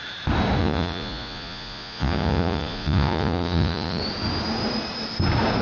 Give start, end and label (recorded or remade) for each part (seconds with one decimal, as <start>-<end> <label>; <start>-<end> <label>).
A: 0.0-0.6 recorded; 0.6-4.0 remade; 4.0-5.6 recorded